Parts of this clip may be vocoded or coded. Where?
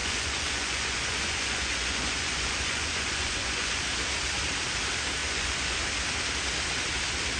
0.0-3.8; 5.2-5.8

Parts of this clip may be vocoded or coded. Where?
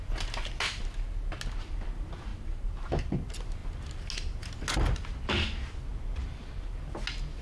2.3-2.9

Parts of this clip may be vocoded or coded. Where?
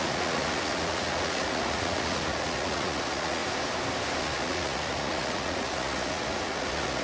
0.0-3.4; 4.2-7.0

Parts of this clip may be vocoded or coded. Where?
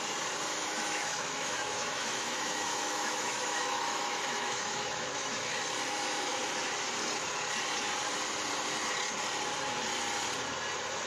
0.5-5.6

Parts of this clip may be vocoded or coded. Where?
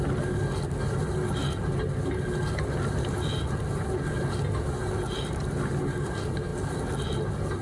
none